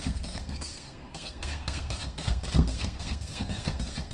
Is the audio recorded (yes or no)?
no